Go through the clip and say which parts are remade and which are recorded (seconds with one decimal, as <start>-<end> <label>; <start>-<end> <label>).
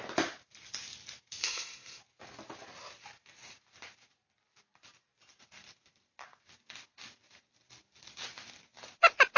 0.0-1.4 recorded; 1.4-2.0 remade; 2.0-9.4 recorded